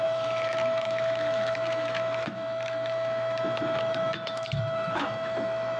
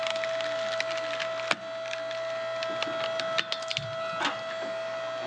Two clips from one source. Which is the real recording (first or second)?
second